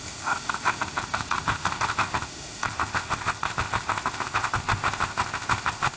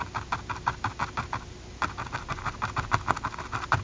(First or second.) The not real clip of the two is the first